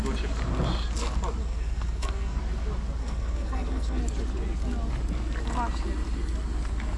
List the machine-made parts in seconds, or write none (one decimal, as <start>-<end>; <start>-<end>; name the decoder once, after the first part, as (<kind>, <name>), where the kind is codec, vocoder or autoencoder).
1.4-2.4 (codec, SNAC); 3.0-4.0

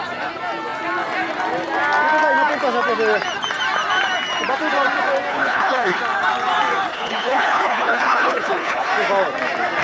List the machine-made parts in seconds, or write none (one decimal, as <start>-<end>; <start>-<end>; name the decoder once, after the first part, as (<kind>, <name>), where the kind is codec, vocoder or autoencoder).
5.3-6.0 (codec, HILCodec); 6.9-8.9